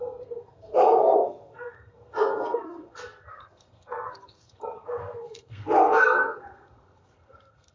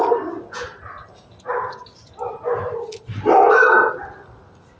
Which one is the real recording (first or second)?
second